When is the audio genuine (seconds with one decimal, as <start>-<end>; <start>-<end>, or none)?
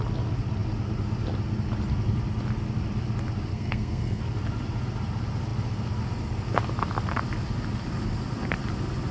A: 0.0-3.5; 4.2-9.1